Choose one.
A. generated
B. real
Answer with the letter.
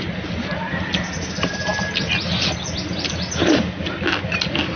B